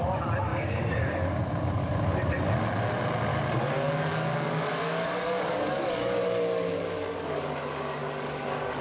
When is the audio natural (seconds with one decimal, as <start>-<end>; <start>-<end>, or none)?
0.0-0.5; 1.4-1.8; 2.3-3.3; 7.5-8.0